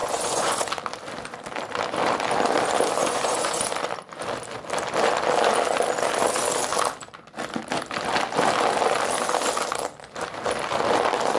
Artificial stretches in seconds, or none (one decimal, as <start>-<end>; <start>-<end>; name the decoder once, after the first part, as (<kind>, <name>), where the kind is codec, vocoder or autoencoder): 0.0-0.7 (vocoder, Vocos); 3.0-3.7